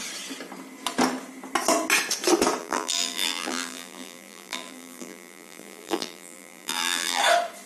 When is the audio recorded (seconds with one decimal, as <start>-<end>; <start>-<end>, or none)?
0.0-2.6; 7.2-7.7